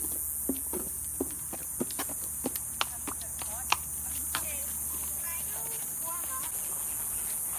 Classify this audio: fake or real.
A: real